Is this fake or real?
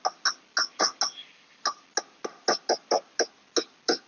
real